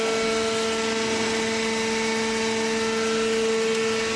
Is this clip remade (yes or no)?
no